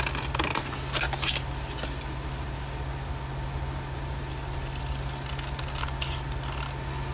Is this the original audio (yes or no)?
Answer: yes